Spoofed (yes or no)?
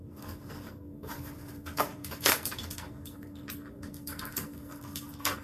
yes